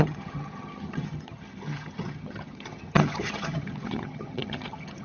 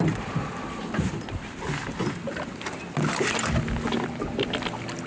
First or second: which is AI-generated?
first